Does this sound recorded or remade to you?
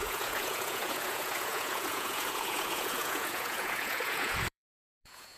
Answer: remade